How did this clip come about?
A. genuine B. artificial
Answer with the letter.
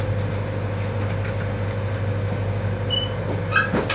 A